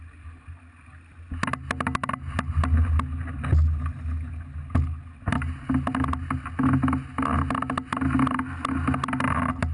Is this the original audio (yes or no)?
yes